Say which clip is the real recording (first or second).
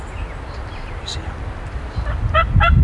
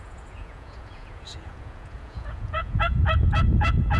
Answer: first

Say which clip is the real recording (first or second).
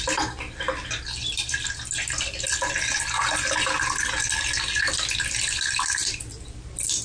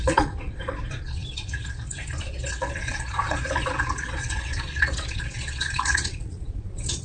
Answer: first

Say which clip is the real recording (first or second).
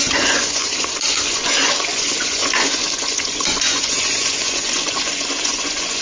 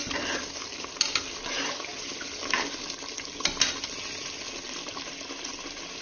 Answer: second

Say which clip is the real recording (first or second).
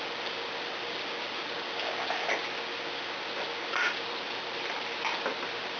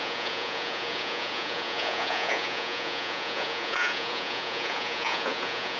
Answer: first